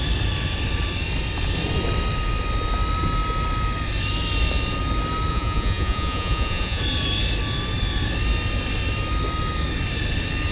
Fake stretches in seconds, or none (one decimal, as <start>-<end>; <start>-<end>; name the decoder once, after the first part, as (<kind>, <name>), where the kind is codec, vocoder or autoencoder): 5.3-6.8 (vocoder, Vocos)